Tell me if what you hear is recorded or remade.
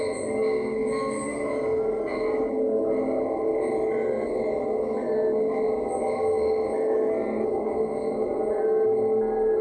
recorded